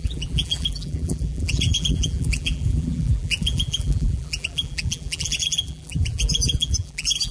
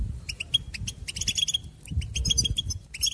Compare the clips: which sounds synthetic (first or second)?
first